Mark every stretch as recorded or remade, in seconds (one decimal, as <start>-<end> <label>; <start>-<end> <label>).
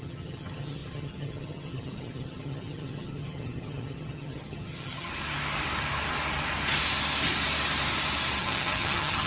0.0-5.1 remade; 5.1-8.4 recorded; 8.4-9.3 remade